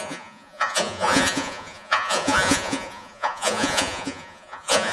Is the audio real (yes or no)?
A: no